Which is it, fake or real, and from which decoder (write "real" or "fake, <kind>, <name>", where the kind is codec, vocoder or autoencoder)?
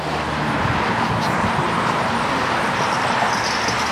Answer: real